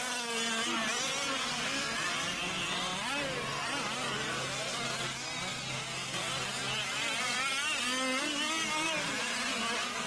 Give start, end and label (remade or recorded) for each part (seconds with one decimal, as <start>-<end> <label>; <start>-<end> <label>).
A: 0.0-10.1 recorded